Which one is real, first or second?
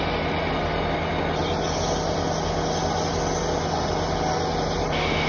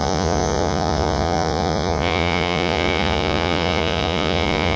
first